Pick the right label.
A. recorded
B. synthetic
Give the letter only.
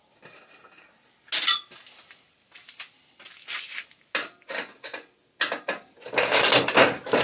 A